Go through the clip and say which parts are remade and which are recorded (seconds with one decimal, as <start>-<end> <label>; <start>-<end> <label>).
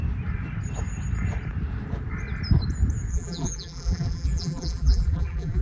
0.0-3.1 recorded; 3.1-5.6 remade